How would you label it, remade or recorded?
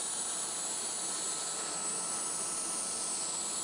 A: recorded